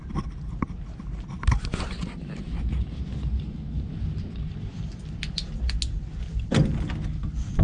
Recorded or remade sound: recorded